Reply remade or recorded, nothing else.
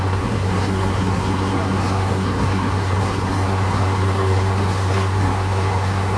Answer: remade